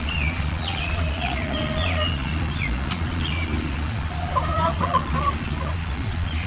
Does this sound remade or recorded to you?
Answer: remade